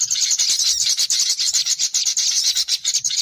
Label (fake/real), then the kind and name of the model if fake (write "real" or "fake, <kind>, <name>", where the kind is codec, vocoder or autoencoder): real